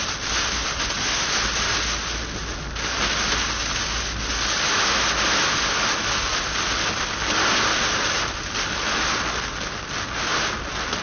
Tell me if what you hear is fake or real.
real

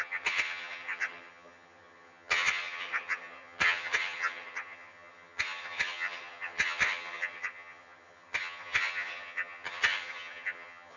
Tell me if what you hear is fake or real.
fake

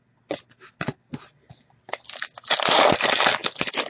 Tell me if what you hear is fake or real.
real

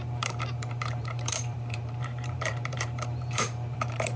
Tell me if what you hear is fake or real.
fake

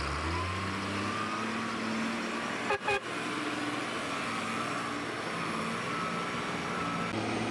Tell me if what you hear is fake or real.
real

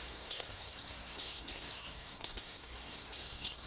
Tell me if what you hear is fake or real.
fake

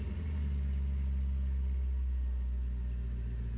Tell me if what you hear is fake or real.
real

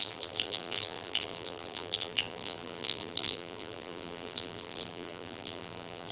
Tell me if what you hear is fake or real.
fake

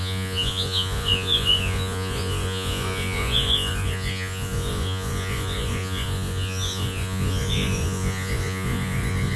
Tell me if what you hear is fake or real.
fake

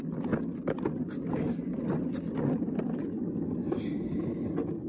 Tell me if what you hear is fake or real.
real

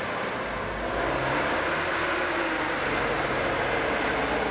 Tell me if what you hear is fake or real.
real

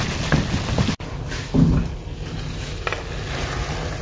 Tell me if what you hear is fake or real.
real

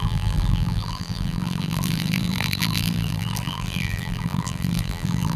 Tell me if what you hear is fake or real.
fake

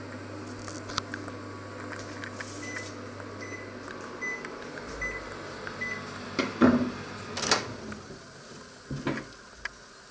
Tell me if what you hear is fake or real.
real